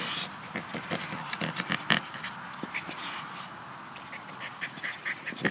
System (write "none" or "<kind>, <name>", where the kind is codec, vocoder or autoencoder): none